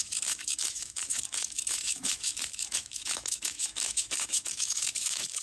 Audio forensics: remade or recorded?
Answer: remade